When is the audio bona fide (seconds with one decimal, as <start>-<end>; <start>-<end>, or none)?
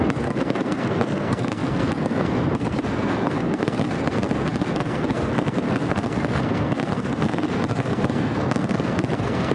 none